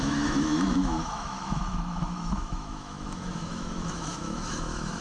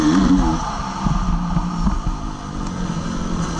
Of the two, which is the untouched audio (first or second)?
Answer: second